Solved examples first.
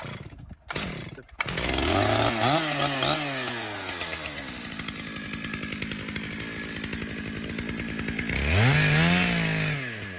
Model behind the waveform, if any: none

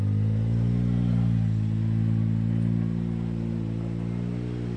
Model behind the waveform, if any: none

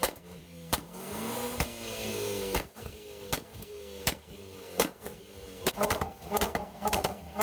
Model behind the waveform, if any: codec, SNAC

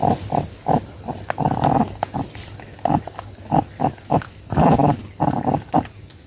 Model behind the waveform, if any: none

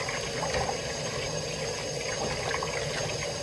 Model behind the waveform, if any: none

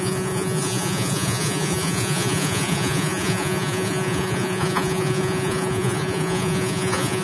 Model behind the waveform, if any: vocoder, Vocos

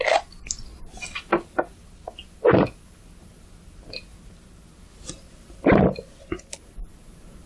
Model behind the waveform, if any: none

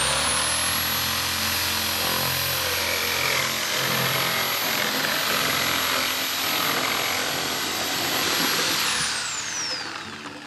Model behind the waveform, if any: none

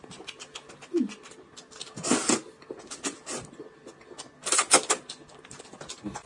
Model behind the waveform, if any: none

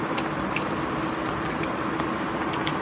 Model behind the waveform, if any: none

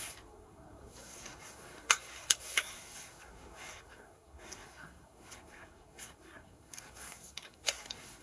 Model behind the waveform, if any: codec, SNAC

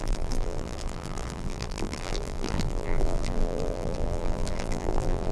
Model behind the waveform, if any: vocoder, BigVGAN v2